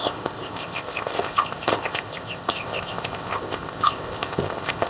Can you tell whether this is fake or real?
fake